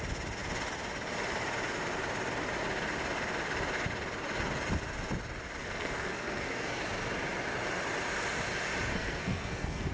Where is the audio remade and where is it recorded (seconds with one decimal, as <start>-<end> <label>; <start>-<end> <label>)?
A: 0.0-5.6 recorded; 5.6-6.8 remade; 6.8-8.9 recorded; 8.9-9.9 remade